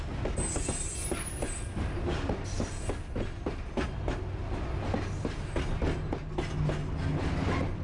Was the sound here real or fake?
real